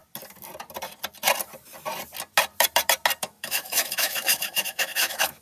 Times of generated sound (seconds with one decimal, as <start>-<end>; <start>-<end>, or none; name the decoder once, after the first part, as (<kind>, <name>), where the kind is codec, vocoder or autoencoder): 3.2-5.4 (autoencoder, DAC-VAE)